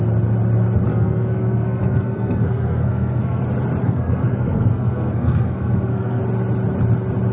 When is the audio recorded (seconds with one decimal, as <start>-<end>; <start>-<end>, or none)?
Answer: 0.0-0.9; 3.4-3.8; 6.2-7.3